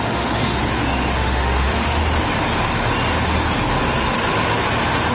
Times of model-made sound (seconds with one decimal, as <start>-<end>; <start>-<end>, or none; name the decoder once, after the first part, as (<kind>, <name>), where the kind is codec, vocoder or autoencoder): 0.0-0.6 (autoencoder, DAC-VAE); 1.2-2.0